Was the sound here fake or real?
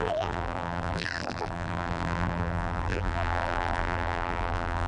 fake